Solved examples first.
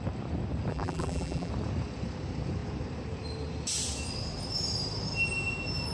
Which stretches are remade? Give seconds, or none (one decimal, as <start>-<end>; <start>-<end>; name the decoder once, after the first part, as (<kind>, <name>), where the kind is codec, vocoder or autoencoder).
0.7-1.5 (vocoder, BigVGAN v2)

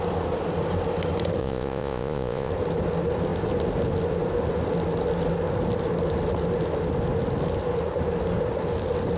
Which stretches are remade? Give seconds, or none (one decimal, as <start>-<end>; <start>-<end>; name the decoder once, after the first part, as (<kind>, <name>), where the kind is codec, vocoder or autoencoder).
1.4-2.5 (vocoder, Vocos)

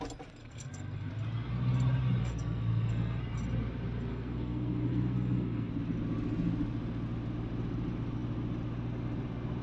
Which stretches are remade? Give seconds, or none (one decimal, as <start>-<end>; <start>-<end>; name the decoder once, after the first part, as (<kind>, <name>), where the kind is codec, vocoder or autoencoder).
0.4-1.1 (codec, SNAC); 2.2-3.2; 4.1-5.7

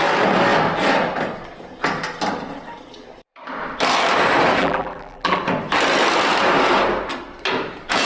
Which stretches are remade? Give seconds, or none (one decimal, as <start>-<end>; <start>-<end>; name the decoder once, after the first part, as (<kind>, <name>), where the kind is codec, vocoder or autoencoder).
4.6-5.4 (vocoder, BigVGAN v2)

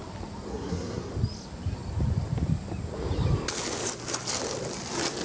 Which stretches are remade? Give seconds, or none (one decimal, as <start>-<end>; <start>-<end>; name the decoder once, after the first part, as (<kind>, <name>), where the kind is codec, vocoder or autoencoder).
0.5-1.1 (codec, SNAC)

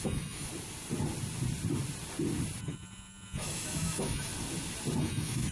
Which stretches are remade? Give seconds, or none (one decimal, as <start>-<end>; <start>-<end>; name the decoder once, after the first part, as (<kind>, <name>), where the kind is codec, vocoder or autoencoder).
0.0-0.5 (autoencoder, DAC-VAE); 2.6-4.3; 5.0-5.5

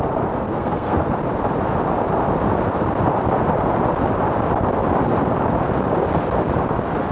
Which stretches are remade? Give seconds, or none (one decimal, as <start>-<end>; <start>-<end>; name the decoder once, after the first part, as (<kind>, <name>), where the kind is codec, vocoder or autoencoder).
0.4-1.1 (codec, SNAC)

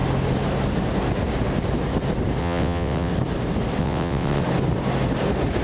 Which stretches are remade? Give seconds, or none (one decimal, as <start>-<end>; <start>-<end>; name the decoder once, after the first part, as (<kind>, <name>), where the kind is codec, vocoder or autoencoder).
2.4-3.1 (vocoder, WaveNeXt); 3.8-4.4